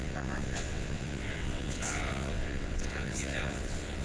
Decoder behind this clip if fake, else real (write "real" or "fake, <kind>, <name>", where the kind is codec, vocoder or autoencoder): fake, vocoder, WaveNeXt